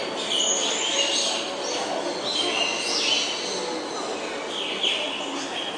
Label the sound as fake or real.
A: real